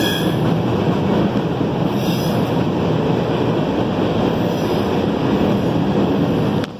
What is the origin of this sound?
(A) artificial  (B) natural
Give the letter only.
B